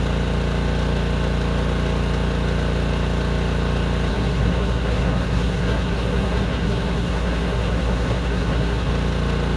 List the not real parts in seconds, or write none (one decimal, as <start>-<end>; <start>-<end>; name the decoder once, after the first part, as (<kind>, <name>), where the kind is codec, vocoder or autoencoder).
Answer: 4.1-8.9 (codec, SNAC)